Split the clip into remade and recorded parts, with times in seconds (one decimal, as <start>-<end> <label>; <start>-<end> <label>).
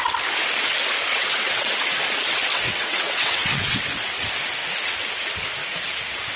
0.0-1.1 recorded; 1.1-1.7 remade; 1.7-2.5 recorded; 2.5-3.9 remade; 3.9-6.4 recorded